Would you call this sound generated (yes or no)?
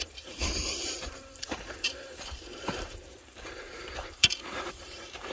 yes